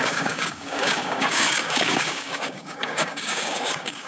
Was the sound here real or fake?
fake